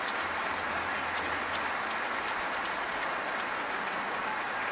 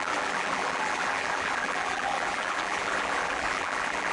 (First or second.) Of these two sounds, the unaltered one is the first